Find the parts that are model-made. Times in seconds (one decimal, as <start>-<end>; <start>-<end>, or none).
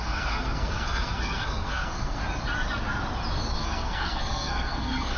0.0-2.2; 3.6-5.2